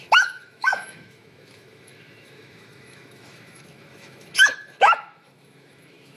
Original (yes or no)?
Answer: no